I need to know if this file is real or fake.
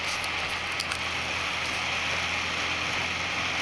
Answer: real